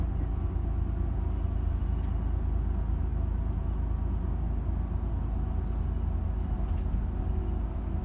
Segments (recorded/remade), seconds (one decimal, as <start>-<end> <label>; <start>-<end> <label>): 0.0-8.0 recorded